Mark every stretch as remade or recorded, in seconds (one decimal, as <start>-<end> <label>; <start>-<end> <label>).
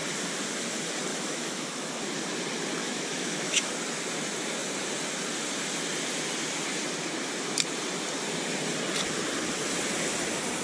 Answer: 0.0-1.1 recorded; 1.1-1.9 remade; 1.9-2.8 recorded; 2.8-3.7 remade; 3.7-10.6 recorded